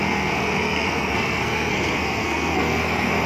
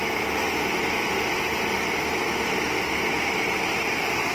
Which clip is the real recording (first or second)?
second